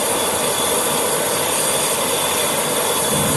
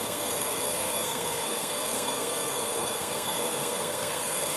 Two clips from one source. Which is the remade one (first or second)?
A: second